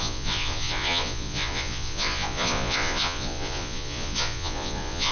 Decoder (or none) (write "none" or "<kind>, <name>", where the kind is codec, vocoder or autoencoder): vocoder, Vocos